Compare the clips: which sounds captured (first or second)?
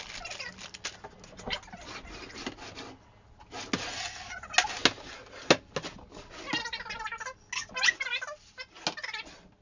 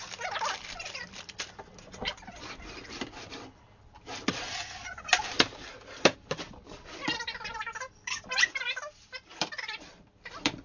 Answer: first